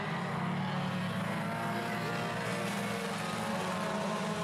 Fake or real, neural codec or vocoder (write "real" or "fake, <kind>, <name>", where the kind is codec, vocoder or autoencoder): real